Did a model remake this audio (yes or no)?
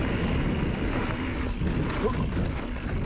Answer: no